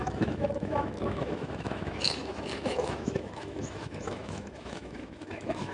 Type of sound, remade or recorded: remade